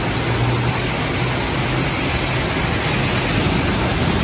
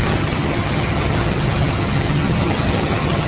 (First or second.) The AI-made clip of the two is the second